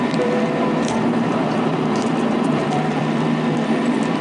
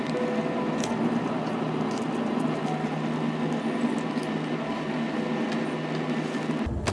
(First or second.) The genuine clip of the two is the second